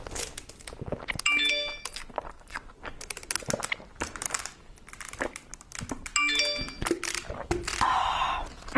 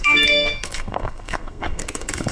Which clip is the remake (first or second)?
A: second